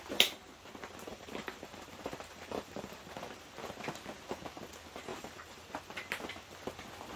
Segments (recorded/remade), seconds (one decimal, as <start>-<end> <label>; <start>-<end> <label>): 0.0-1.1 recorded; 1.1-3.1 remade; 3.1-5.1 recorded; 5.1-5.7 remade; 5.7-7.2 recorded